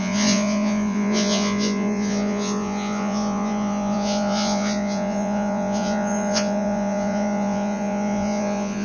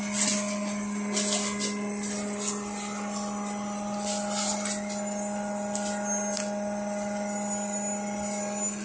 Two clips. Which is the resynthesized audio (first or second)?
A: first